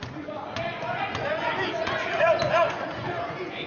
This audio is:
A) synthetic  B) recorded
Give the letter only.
A